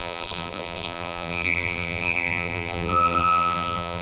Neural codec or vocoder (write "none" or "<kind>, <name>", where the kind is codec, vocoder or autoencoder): vocoder, BigVGAN v2